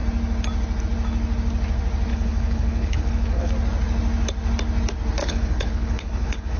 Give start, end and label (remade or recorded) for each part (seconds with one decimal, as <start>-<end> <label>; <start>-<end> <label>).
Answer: 0.0-2.1 recorded; 2.1-3.5 remade; 3.5-5.2 recorded; 5.2-6.6 remade